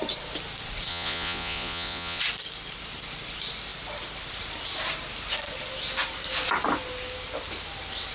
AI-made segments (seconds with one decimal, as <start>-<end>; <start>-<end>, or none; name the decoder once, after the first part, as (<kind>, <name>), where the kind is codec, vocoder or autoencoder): 0.9-2.2 (vocoder, Vocos)